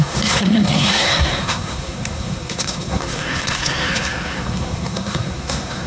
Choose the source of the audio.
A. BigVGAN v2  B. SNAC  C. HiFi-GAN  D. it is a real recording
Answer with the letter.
B